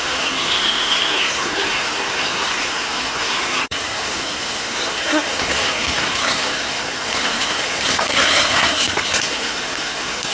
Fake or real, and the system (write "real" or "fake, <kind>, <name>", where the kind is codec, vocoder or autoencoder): fake, codec, SNAC